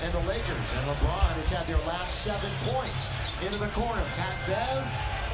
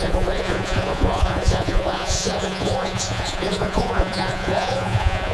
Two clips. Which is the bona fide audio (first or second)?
first